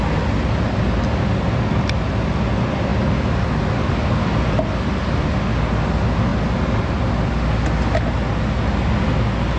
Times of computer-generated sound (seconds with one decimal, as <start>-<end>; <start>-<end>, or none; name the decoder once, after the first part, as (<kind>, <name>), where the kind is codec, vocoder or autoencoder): none